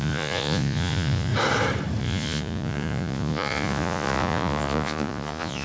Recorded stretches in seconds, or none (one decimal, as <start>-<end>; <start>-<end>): 1.3-2.0